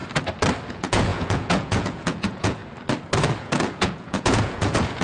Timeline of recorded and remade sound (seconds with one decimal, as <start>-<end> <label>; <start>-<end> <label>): 0.0-0.7 recorded; 0.7-2.6 remade; 2.6-3.4 recorded; 3.4-5.0 remade